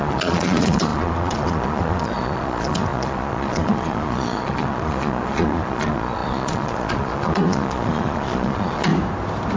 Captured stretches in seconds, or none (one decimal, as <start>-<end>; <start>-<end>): 8.9-9.6